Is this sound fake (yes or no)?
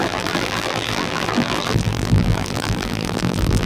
yes